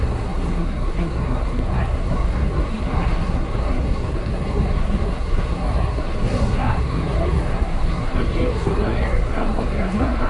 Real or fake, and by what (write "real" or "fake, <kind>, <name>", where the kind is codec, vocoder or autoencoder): fake, codec, SNAC